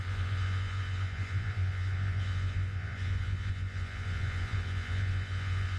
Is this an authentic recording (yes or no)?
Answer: no